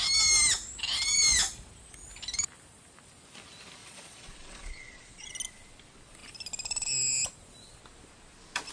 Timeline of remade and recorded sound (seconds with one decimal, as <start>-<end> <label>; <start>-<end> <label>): 0.0-3.8 recorded; 3.8-5.3 remade; 5.3-8.7 recorded